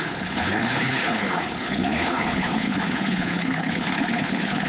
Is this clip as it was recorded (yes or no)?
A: no